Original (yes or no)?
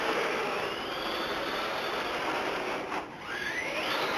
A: no